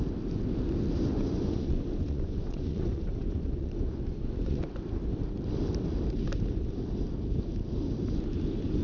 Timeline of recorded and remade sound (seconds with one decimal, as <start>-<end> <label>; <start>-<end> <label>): 0.0-1.1 recorded; 1.1-4.6 remade; 4.6-8.8 recorded